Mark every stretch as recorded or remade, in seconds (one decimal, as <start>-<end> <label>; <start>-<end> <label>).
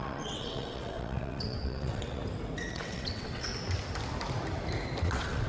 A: 0.0-2.2 remade; 2.2-2.7 recorded; 2.7-3.5 remade; 3.5-5.0 recorded; 5.0-5.5 remade